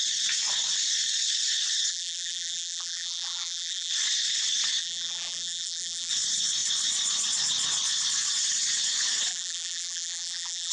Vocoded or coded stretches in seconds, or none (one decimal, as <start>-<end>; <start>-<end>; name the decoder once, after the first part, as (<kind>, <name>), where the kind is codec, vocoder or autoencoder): 1.9-3.9 (vocoder, BigVGAN v2); 4.8-6.1; 9.3-10.7